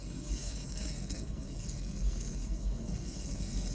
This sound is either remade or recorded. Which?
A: remade